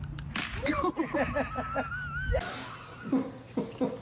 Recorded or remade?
recorded